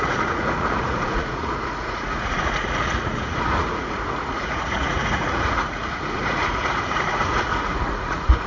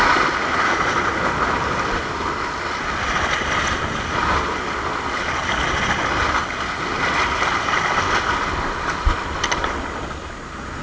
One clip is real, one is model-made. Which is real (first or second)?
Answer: second